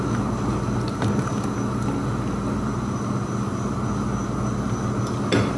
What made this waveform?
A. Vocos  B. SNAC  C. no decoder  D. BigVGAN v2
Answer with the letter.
C